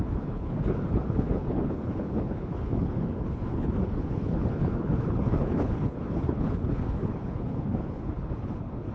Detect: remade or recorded remade